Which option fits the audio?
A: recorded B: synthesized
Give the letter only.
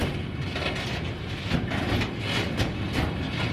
A